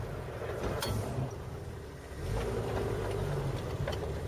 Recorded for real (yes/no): yes